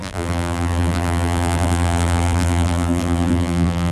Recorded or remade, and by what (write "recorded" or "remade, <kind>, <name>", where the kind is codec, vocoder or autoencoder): remade, vocoder, BigVGAN v2